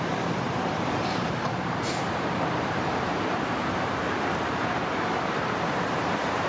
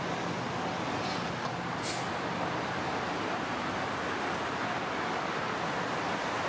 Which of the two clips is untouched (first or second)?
second